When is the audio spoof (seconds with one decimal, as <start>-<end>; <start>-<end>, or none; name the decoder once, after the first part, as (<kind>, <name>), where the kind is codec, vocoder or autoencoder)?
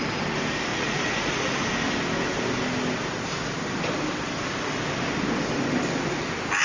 0.7-1.7 (vocoder, Vocos)